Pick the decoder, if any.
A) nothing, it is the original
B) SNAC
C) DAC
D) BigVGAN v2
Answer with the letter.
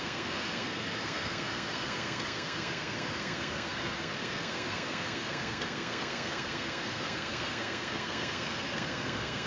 B